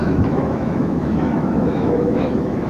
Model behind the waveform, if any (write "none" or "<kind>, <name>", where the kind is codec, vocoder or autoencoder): autoencoder, DAC-VAE